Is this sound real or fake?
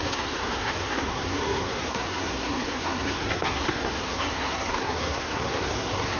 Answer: fake